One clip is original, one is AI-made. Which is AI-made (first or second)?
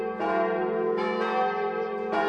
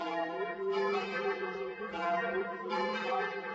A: second